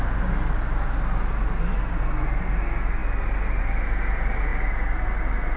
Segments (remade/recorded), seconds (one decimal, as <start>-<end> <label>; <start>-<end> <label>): 0.0-5.6 recorded